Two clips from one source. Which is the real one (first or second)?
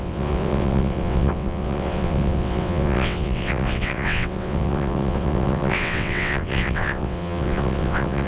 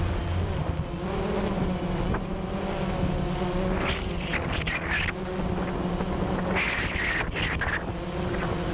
second